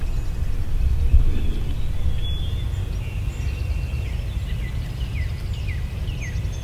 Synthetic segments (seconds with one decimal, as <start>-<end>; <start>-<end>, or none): none